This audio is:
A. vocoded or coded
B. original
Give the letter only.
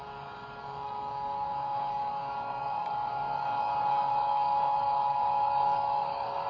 A